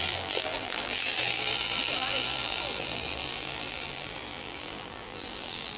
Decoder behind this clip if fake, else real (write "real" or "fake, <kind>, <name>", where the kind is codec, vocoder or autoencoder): fake, vocoder, BigVGAN v2